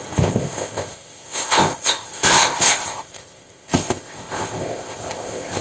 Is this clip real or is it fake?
fake